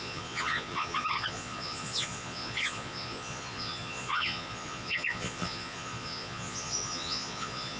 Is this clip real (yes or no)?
no